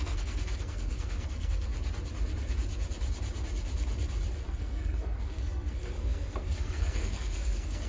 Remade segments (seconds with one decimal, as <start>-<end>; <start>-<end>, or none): 0.0-1.7; 4.5-7.9